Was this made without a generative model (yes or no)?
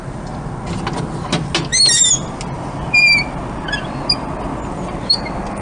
yes